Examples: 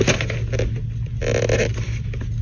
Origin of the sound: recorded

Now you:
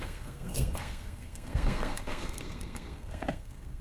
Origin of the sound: remade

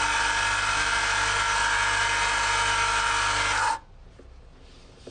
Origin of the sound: recorded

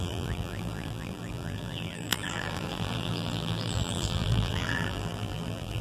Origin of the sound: remade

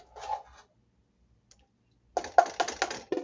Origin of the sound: recorded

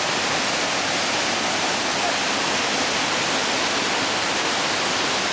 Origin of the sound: recorded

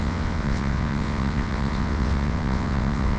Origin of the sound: remade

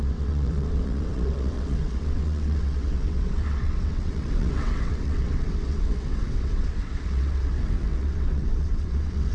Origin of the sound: remade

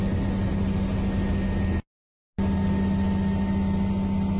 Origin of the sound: recorded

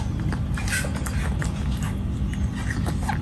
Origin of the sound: recorded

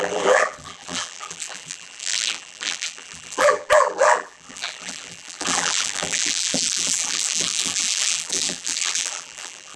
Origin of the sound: remade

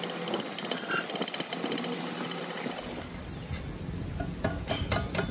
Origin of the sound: recorded